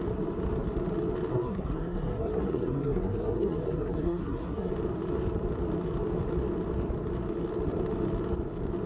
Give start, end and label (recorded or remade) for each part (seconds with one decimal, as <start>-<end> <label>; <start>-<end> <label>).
0.0-1.3 recorded; 1.3-4.7 remade; 4.7-8.9 recorded